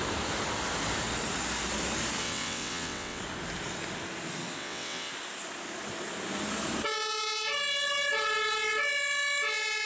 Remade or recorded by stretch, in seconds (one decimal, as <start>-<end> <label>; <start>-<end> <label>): 0.0-2.2 recorded; 2.2-3.2 remade; 3.2-4.6 recorded; 4.6-5.1 remade; 5.1-9.9 recorded